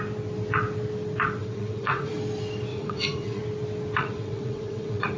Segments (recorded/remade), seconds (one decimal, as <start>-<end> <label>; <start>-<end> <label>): 0.0-1.4 recorded; 1.4-2.1 remade; 2.1-2.7 recorded; 2.7-3.4 remade; 3.4-4.0 recorded; 4.0-5.2 remade